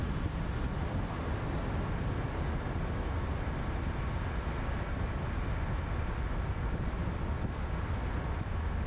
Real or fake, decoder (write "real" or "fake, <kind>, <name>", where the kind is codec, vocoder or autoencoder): real